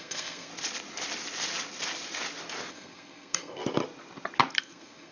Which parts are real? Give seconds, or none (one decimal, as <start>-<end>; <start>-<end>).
0.5-2.7; 3.6-4.6

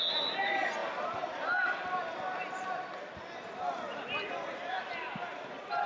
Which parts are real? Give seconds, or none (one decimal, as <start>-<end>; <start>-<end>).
0.0-5.9

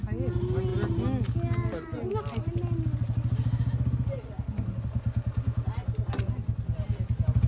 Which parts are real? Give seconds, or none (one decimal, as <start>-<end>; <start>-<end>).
0.0-7.5

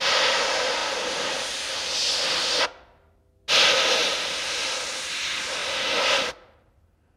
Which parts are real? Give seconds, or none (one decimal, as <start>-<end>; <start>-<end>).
0.0-7.2

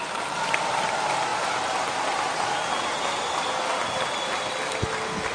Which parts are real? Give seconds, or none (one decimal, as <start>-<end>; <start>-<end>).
0.0-5.3